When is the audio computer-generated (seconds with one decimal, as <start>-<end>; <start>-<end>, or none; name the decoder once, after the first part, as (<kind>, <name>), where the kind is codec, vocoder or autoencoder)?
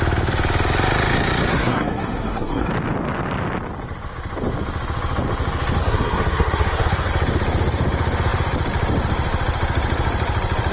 1.5-2.7 (codec, SNAC); 5.8-7.1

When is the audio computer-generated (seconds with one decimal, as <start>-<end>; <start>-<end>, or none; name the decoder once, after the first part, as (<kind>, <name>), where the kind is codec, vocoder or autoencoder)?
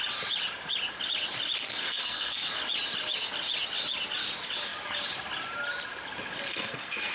1.8-2.5 (codec, SNAC); 6.5-7.1